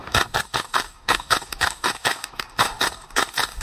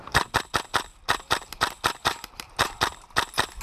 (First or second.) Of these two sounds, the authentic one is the second